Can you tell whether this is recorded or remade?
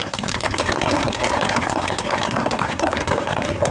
remade